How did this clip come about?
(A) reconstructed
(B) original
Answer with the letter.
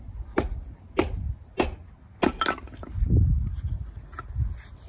B